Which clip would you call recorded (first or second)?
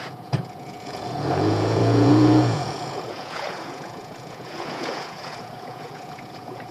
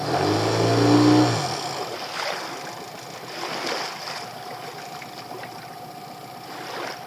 second